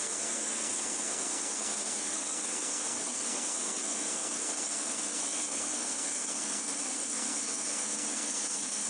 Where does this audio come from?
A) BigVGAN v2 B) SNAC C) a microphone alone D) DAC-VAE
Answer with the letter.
B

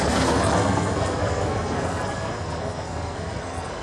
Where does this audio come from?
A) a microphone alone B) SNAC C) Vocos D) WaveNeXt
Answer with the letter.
B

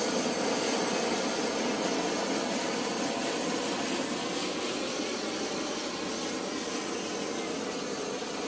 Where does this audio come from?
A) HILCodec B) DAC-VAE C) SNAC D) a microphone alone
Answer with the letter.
D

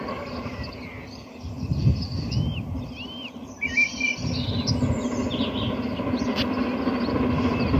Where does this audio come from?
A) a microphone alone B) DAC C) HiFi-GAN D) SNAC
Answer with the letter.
A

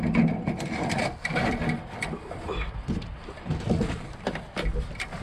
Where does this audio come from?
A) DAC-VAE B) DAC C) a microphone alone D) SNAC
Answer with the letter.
C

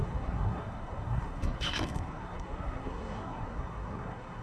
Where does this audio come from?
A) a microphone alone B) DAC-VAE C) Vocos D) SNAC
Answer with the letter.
D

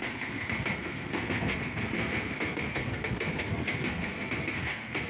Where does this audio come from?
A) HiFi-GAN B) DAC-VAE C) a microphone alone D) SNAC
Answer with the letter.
D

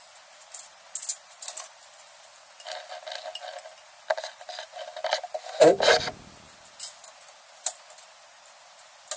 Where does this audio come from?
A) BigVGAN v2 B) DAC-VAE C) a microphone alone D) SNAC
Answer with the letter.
C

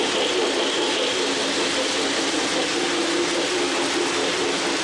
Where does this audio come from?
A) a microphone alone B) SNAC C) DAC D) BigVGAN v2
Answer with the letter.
A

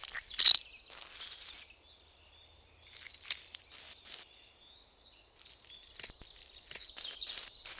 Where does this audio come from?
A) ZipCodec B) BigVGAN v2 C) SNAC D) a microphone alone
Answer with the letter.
D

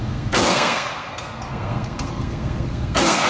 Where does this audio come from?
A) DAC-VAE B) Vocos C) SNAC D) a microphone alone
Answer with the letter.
C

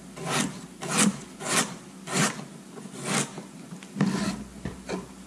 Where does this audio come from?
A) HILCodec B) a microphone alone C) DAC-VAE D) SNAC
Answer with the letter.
B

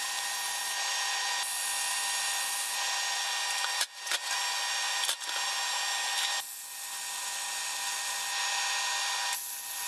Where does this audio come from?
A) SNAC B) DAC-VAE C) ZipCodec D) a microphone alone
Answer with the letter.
D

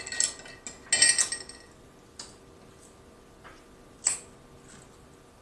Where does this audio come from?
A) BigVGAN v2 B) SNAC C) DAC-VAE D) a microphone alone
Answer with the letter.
D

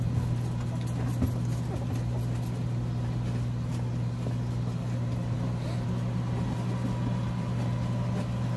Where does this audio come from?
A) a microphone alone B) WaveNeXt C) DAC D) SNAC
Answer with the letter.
A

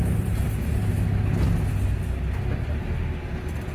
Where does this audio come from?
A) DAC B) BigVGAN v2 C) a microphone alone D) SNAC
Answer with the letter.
C